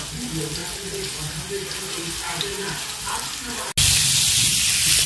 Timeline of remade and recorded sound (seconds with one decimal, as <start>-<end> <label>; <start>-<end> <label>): 0.0-5.1 recorded